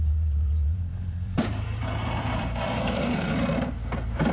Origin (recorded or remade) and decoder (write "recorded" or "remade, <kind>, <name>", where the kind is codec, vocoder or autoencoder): remade, vocoder, BigVGAN v2